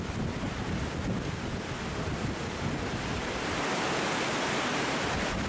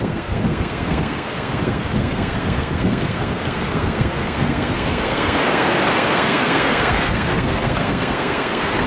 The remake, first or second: second